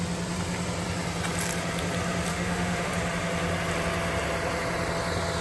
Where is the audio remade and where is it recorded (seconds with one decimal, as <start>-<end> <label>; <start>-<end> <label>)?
0.0-2.3 recorded; 2.3-2.9 remade; 2.9-5.4 recorded